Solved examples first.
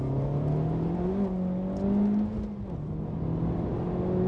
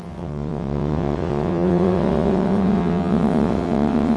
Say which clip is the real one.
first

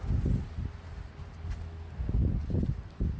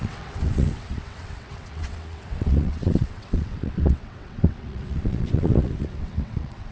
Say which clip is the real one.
first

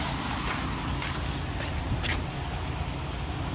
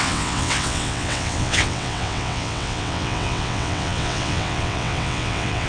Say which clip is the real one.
first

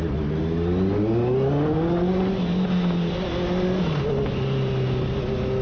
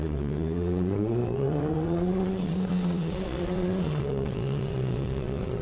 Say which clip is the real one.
first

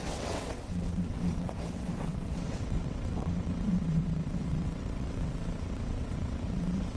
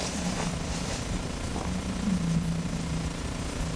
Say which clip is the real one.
second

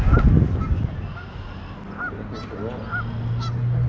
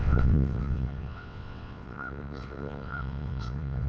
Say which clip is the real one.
first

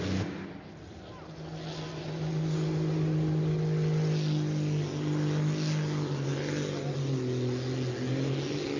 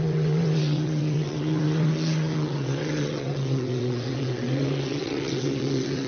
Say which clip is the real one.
first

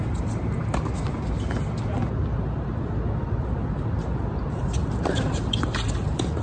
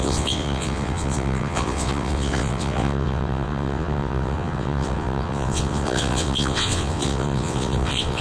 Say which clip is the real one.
first